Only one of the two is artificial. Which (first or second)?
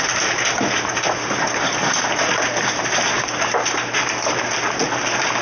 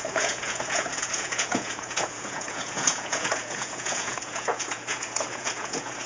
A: second